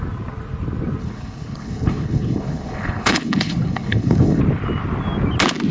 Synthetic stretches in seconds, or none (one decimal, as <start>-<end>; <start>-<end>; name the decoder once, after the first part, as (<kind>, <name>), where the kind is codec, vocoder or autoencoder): 1.0-4.4 (codec, HILCodec)